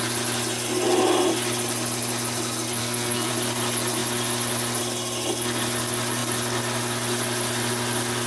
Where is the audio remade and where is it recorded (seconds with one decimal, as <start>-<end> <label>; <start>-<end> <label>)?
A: 0.0-2.8 recorded; 2.8-3.3 remade; 3.3-8.3 recorded

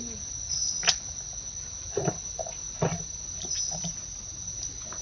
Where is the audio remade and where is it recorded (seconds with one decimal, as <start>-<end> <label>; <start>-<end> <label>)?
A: 0.0-5.0 recorded